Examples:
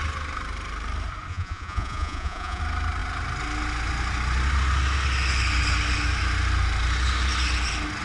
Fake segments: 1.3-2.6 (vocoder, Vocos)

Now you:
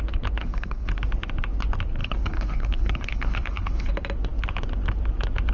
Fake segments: 0.4-1.0 (codec, HILCodec); 2.0-3.9

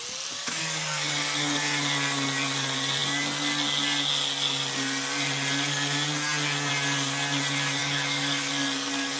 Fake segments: 0.6-1.6 (codec, DAC); 7.8-8.5

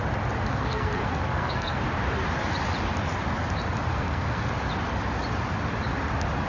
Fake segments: 0.5-1.8 (codec, SNAC); 3.9-4.4

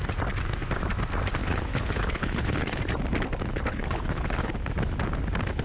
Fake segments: 1.4-2.8 (codec, HILCodec); 3.5-4.5

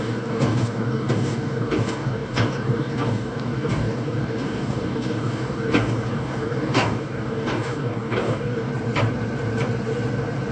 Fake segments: 0.0-8.7 (codec, DAC)

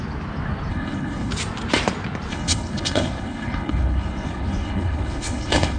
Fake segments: 0.7-1.3 (codec, HILCodec); 2.3-5.8